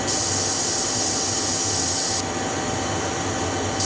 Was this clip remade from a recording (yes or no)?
no